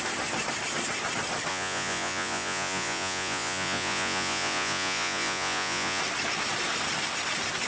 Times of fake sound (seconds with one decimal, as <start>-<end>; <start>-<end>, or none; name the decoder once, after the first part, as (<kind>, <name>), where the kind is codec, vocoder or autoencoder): 1.5-6.0 (vocoder, Vocos)